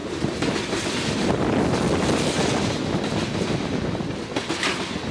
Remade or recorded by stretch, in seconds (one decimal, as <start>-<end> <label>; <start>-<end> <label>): 0.0-5.1 recorded